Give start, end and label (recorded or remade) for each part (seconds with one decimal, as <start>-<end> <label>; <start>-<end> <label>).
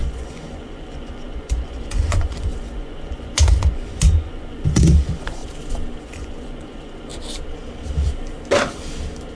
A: 0.0-5.4 remade; 5.4-6.0 recorded; 6.0-7.1 remade; 7.1-9.4 recorded